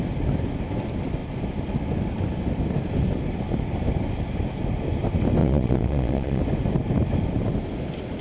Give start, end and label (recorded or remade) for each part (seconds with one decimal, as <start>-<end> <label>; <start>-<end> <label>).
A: 0.0-5.4 recorded; 5.4-6.4 remade; 6.4-8.2 recorded